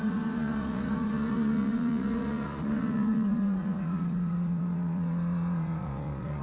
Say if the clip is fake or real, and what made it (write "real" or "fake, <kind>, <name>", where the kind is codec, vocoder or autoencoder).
fake, vocoder, Vocos